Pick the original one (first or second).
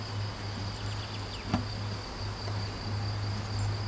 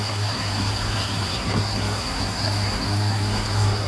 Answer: first